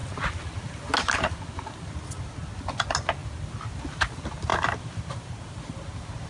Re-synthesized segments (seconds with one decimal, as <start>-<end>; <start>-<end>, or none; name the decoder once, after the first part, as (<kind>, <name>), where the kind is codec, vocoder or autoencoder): 4.5-5.7 (vocoder, BigVGAN v2)